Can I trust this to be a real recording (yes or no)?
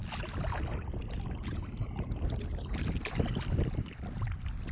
yes